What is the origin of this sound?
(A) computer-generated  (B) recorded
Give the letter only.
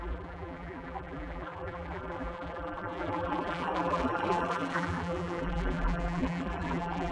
A